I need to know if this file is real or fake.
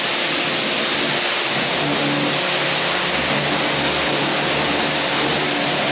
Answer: real